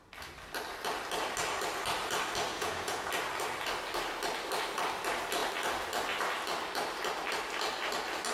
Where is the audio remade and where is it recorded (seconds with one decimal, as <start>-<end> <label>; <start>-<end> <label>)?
0.0-2.5 recorded; 2.5-3.1 remade; 3.1-8.3 recorded